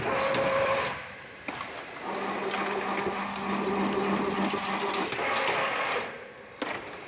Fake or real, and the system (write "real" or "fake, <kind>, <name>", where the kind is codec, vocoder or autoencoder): real